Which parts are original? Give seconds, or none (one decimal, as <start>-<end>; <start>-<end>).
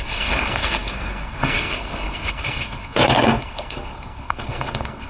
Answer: none